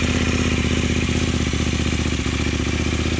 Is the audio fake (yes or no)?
no